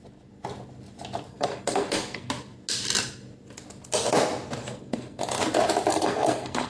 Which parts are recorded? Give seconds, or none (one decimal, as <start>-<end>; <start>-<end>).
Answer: 0.0-1.3; 2.3-4.6; 5.2-5.9